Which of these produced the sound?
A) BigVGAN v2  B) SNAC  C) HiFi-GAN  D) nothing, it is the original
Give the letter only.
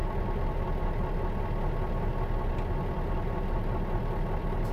D